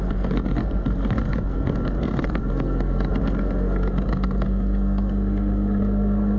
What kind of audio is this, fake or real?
fake